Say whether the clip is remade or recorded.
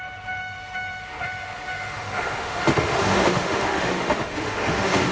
remade